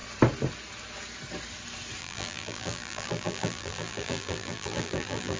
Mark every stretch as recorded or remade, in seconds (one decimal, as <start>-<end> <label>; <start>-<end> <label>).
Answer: 0.0-2.0 recorded; 2.0-5.4 remade